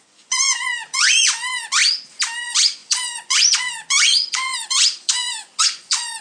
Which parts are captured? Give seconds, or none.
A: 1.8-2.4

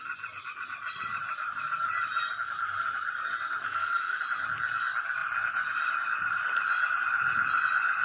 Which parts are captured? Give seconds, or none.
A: 0.0-3.6; 4.2-8.0

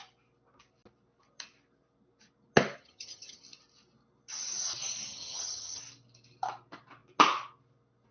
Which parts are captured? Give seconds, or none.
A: 0.0-2.8; 3.4-5.1; 5.8-8.1

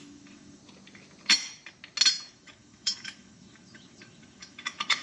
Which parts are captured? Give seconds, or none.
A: 0.6-2.1

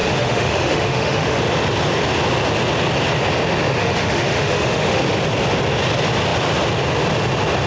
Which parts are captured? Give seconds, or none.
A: 1.4-3.8; 5.0-7.7

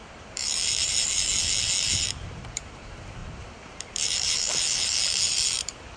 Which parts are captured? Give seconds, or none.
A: none